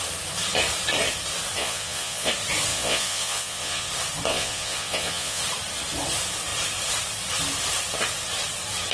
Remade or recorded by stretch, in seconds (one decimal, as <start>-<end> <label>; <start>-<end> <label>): 0.0-1.6 recorded; 1.6-2.3 remade; 2.3-2.7 recorded; 2.7-3.9 remade; 3.9-4.3 recorded; 4.3-5.4 remade; 5.4-8.9 recorded